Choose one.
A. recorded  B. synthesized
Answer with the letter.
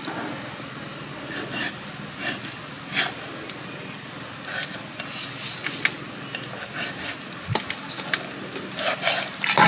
A